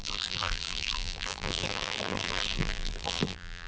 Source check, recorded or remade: remade